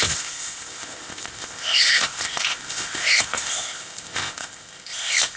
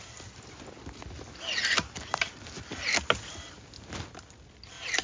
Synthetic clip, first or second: first